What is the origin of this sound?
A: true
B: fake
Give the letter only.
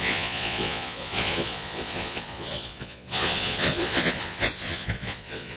B